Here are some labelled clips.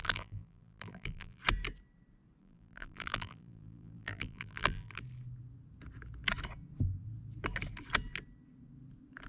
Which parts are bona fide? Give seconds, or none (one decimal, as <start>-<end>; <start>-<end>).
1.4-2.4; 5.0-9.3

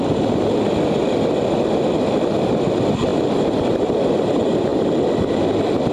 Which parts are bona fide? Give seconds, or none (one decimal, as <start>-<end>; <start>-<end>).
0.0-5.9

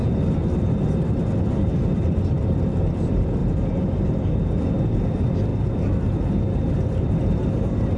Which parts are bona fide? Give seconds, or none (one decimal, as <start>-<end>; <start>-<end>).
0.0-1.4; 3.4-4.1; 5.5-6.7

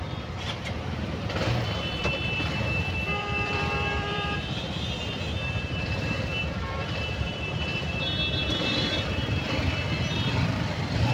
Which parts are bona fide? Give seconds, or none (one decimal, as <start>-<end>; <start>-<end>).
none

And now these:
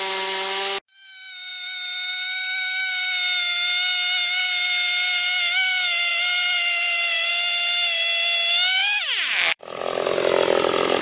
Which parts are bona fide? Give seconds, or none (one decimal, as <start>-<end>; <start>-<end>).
0.0-6.1; 7.3-8.8; 9.8-11.0

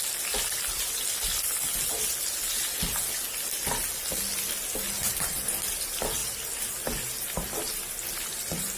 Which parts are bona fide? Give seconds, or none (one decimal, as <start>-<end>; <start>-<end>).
0.0-5.0; 5.6-8.8

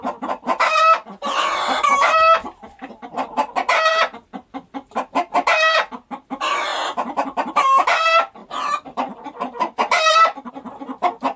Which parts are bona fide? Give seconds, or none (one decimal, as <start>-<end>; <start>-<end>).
0.0-6.7; 7.8-8.4; 10.5-11.4

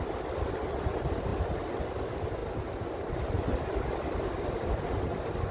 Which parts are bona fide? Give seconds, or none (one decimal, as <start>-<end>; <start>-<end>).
1.3-2.0